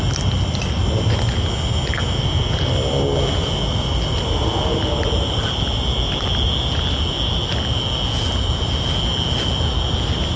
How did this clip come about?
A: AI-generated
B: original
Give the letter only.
B